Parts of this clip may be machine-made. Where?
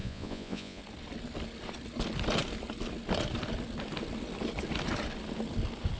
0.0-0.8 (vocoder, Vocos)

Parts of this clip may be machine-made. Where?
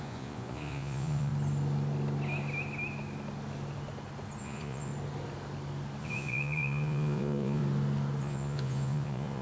0.0-1.3 (vocoder, Vocos); 4.4-4.9; 6.0-7.6; 8.2-9.4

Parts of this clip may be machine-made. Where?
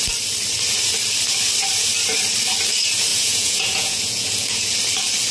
3.1-4.7 (vocoder, Vocos)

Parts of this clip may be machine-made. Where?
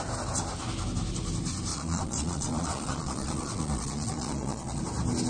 1.7-4.8 (vocoder, Vocos)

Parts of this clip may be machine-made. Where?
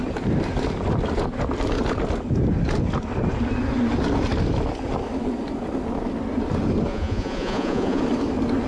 6.9-8.0 (vocoder, Vocos)